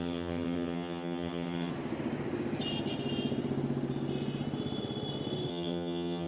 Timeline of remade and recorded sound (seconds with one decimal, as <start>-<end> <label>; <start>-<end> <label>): 0.0-1.7 remade; 1.7-5.5 recorded; 5.5-6.3 remade